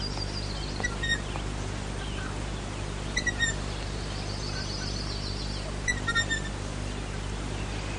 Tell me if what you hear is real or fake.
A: real